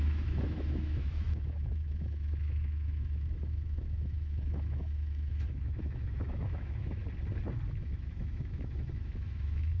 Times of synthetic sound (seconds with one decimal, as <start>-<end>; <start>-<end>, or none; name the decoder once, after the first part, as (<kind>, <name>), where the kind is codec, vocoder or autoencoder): 0.0-7.0 (autoencoder, DAC-VAE); 7.7-9.8